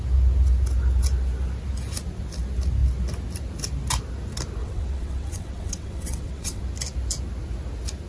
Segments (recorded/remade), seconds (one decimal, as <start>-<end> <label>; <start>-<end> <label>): 0.0-4.6 recorded; 4.6-6.6 remade; 6.6-8.1 recorded